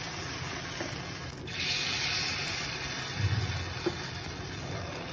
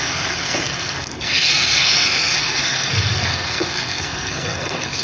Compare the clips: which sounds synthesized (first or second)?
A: second